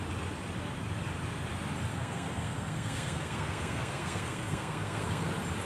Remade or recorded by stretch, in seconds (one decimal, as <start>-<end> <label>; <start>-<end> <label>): 0.0-1.9 recorded; 1.9-5.3 remade; 5.3-5.7 recorded